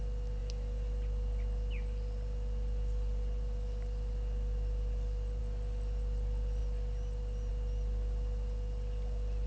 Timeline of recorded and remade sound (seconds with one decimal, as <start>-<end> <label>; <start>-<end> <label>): 0.0-9.5 recorded